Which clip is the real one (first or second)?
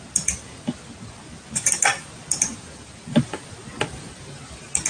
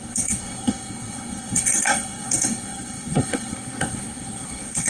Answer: first